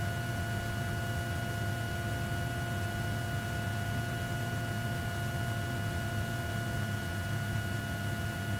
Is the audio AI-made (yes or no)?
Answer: no